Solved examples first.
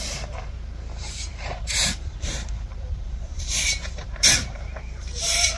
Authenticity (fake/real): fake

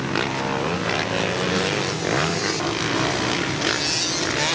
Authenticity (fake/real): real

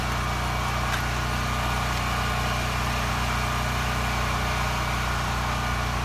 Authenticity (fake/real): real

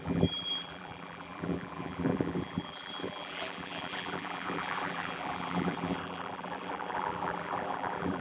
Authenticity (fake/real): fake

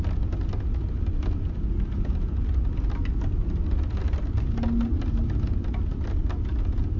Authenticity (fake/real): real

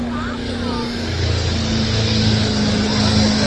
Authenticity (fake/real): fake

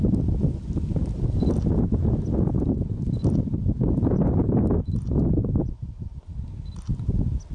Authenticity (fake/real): real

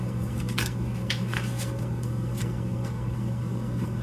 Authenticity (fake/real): fake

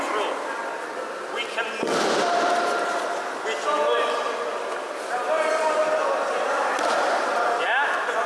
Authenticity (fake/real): real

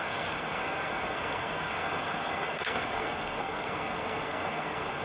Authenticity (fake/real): fake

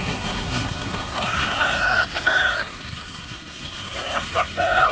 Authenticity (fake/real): fake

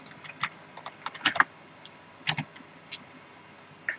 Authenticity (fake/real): real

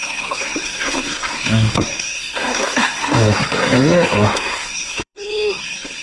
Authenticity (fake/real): fake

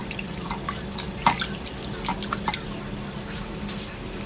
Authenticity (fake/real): real